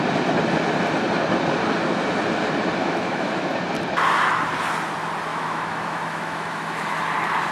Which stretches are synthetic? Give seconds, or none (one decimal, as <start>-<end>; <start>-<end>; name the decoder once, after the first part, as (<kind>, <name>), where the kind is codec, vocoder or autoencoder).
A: 2.8-3.5 (autoencoder, DAC-VAE); 5.3-7.0